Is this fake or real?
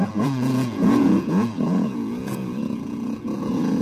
fake